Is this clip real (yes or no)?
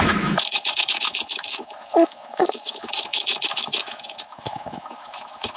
no